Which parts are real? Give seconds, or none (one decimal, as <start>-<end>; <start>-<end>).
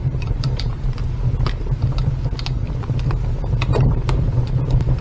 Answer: 0.7-3.7